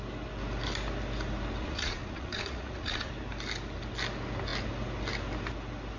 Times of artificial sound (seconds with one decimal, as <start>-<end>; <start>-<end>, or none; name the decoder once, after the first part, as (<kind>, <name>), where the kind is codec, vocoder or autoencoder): 1.6-3.1 (vocoder, Vocos)